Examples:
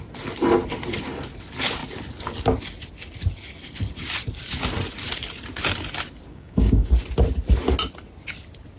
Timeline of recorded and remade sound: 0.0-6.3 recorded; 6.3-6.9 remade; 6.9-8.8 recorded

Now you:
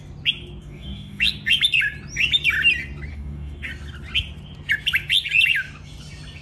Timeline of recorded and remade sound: 0.0-0.6 recorded; 0.6-1.2 remade; 1.2-3.1 recorded; 3.1-3.7 remade; 3.7-6.4 recorded

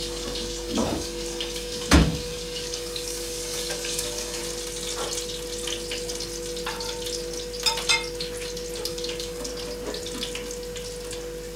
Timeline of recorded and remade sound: 0.0-4.4 remade; 4.4-8.9 recorded; 8.9-9.5 remade; 9.5-11.6 recorded

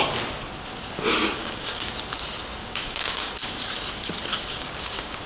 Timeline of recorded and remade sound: 0.0-1.4 recorded; 1.4-1.9 remade; 1.9-2.6 recorded; 2.6-3.3 remade; 3.3-4.3 recorded; 4.3-5.3 remade

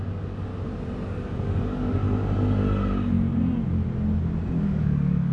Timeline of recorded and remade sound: 0.0-0.5 remade; 0.5-1.3 recorded; 1.3-2.0 remade; 2.0-4.5 recorded; 4.5-5.3 remade